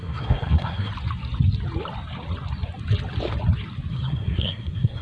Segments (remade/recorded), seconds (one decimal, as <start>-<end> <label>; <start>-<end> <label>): 0.0-0.9 remade; 0.9-3.9 recorded; 3.9-5.0 remade